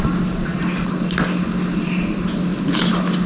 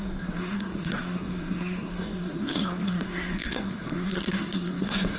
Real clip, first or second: first